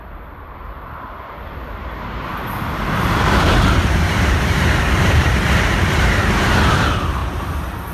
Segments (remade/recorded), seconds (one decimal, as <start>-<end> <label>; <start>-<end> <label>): 0.0-2.3 remade; 2.3-3.1 recorded; 3.1-7.2 remade; 7.2-7.9 recorded

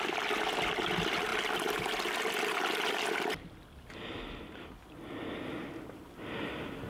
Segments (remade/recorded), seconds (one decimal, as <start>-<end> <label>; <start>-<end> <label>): 0.0-6.9 recorded

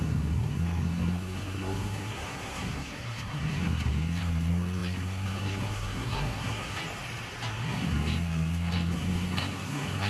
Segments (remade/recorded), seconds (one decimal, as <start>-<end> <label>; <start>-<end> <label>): 0.0-6.8 remade; 6.8-7.5 recorded; 7.5-10.1 remade

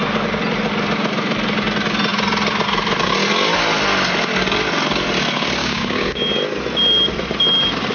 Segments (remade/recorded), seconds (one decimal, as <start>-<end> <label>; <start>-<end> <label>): 0.0-5.6 recorded; 5.6-6.2 remade; 6.2-7.9 recorded

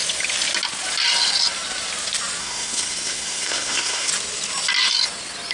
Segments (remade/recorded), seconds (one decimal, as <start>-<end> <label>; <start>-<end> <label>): 0.0-2.4 recorded; 2.4-4.1 remade; 4.1-5.5 recorded

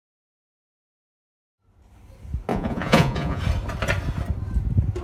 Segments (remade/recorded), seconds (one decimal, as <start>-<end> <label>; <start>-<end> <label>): 0.0-2.5 recorded; 2.5-3.4 remade; 3.4-5.0 recorded

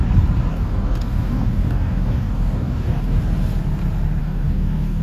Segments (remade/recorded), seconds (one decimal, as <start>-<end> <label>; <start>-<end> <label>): 0.0-0.5 recorded; 0.5-3.2 remade; 3.2-4.2 recorded; 4.2-5.0 remade

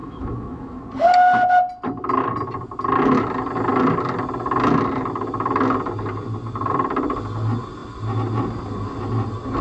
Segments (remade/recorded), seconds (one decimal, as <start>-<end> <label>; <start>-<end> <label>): 0.0-0.8 remade; 0.8-9.6 recorded